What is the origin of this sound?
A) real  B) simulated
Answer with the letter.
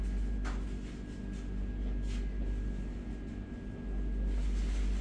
A